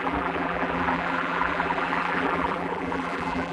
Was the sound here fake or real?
fake